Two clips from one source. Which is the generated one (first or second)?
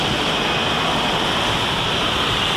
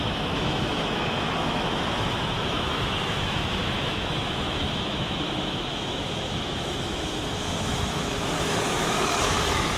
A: second